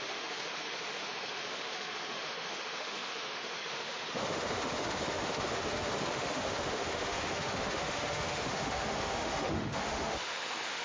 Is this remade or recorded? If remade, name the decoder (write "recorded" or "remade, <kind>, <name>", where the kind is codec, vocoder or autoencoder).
remade, autoencoder, DAC-VAE